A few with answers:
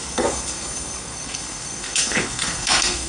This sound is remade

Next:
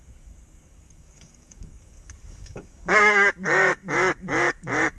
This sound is remade